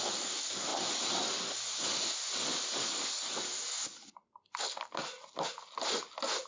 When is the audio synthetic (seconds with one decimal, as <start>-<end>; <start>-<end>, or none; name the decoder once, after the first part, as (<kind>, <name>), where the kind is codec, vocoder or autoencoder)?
none